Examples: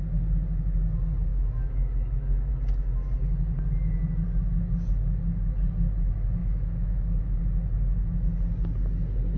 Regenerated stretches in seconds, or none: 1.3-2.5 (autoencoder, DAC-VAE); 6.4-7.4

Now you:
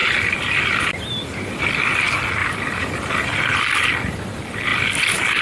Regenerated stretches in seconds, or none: 0.0-1.6 (vocoder, BigVGAN v2); 2.4-3.6; 4.7-5.4

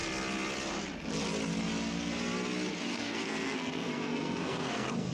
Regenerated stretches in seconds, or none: 2.9-5.1 (codec, SNAC)

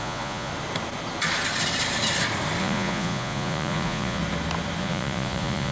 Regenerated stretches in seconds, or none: 0.0-0.5 (vocoder, Vocos); 2.6-4.2; 4.8-5.7

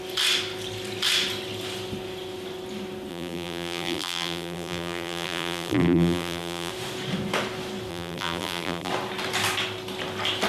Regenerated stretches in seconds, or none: 3.1-6.7 (vocoder, BigVGAN v2); 7.9-8.9

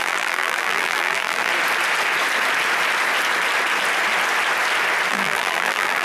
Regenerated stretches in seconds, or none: 0.0-1.5 (vocoder, BigVGAN v2); 5.1-6.0